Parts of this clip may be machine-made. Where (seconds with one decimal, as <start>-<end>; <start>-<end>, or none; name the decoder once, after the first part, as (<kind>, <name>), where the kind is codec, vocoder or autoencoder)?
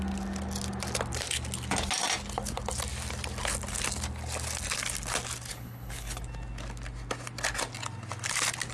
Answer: 5.5-6.2 (codec, HILCodec)